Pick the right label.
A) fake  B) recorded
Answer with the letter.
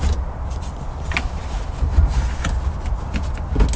B